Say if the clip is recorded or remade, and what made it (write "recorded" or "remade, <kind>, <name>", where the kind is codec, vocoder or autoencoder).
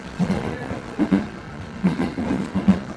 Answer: remade, vocoder, Vocos